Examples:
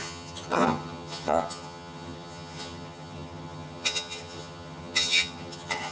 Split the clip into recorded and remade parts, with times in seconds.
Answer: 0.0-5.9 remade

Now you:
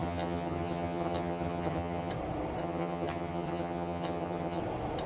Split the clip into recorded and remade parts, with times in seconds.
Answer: 0.0-2.1 remade; 2.1-2.6 recorded; 2.6-4.6 remade; 4.6-5.1 recorded

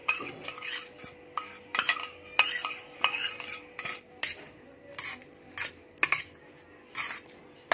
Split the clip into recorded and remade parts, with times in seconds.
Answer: 0.0-7.7 recorded

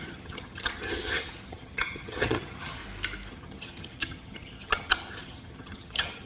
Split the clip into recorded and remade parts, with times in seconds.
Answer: 0.0-2.8 remade; 2.8-3.3 recorded; 3.3-6.3 remade

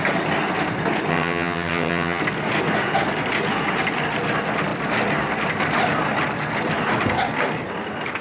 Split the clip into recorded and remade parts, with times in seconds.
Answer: 0.0-1.1 recorded; 1.1-2.2 remade; 2.2-8.2 recorded

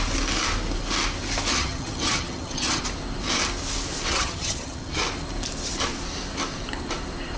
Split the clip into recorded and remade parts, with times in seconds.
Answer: 0.0-1.5 recorded; 1.5-2.8 remade; 2.8-4.1 recorded; 4.1-5.0 remade; 5.0-7.4 recorded

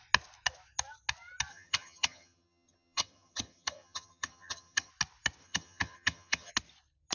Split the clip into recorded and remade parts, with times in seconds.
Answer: 0.0-1.5 recorded; 1.5-4.9 remade; 4.9-5.4 recorded; 5.4-6.5 remade; 6.5-7.1 recorded